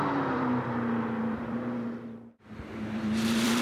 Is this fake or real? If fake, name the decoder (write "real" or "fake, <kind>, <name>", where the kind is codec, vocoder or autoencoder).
fake, vocoder, BigVGAN v2